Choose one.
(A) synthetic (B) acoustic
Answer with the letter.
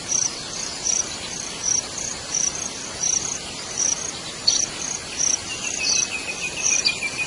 A